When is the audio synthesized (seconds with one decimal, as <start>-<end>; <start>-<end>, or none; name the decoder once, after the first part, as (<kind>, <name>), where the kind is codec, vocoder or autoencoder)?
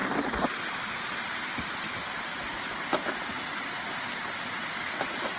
none